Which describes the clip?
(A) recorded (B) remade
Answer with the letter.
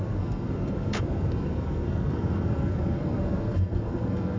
B